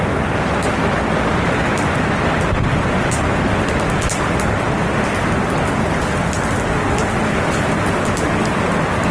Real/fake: real